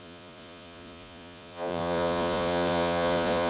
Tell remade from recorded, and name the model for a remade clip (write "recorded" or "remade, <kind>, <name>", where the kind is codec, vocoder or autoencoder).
remade, vocoder, Vocos